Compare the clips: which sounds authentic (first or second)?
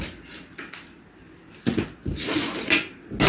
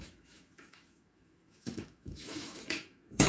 first